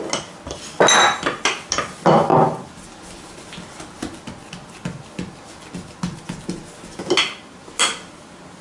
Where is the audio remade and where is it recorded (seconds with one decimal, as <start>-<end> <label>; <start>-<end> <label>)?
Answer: 0.0-8.6 recorded